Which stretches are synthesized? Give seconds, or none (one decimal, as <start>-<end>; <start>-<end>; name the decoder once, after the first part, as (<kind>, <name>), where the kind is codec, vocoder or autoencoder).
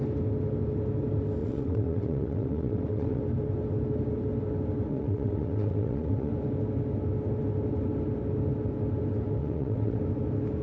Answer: 1.4-3.2 (vocoder, WaveNeXt); 4.9-6.3; 9.4-10.0